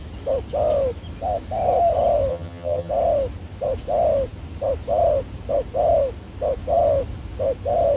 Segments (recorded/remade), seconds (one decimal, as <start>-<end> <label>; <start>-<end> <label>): 0.0-2.3 recorded; 2.3-2.9 remade; 2.9-8.0 recorded

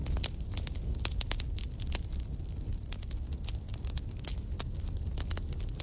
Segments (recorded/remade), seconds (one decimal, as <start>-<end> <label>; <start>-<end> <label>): 0.0-5.8 recorded

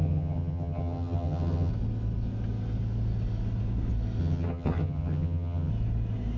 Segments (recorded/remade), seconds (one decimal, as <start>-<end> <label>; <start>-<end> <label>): 0.0-1.7 remade; 1.7-4.2 recorded; 4.2-5.7 remade; 5.7-6.4 recorded

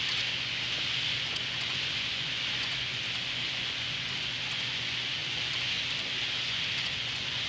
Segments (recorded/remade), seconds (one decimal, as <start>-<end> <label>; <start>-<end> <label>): 0.0-7.5 remade

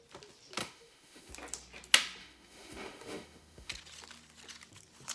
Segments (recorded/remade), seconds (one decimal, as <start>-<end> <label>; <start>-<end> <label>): 0.0-0.6 recorded; 0.6-1.3 remade; 1.3-2.2 recorded; 2.2-3.7 remade; 3.7-5.1 recorded

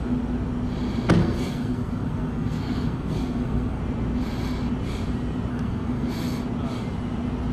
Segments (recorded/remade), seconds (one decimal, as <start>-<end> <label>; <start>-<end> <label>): 0.0-1.2 recorded; 1.2-3.8 remade; 3.8-5.5 recorded; 5.5-6.1 remade; 6.1-7.5 recorded

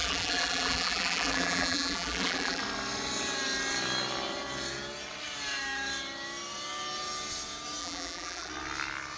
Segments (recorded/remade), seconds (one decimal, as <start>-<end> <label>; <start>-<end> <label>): 0.0-2.6 remade; 2.6-7.8 recorded; 7.8-8.5 remade; 8.5-9.2 recorded

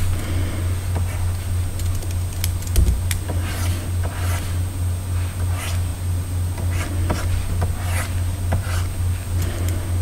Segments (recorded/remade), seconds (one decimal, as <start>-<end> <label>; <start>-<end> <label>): 0.0-10.0 recorded